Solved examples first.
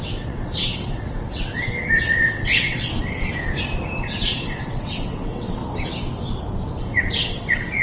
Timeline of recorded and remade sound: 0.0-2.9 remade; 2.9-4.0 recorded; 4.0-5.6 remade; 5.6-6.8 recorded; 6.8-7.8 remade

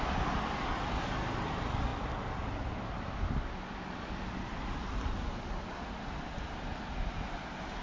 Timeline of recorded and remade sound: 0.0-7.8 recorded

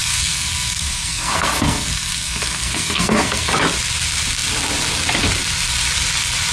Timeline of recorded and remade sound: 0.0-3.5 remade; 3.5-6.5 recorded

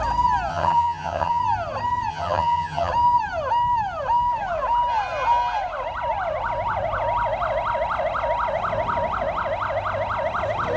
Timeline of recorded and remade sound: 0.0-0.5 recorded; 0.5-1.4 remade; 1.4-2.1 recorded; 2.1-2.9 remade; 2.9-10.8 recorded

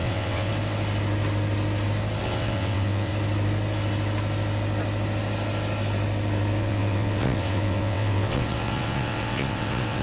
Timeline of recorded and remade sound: 0.0-0.5 remade; 0.5-2.2 recorded; 2.2-3.1 remade; 3.1-6.6 recorded; 6.6-10.0 remade